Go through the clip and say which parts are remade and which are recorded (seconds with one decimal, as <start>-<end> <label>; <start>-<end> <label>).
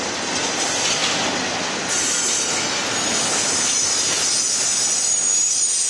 0.0-5.9 recorded